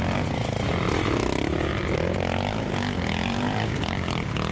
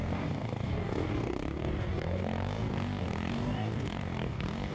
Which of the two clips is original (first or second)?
first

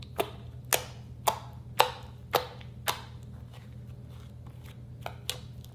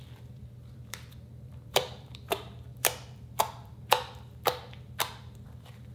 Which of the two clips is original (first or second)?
first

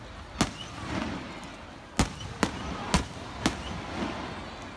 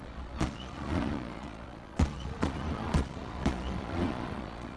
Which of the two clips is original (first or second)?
first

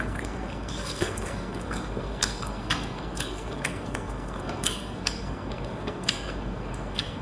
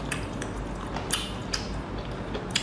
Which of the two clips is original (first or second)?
second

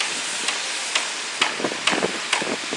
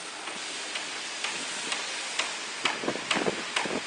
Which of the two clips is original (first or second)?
first